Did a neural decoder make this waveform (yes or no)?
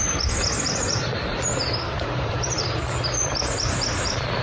yes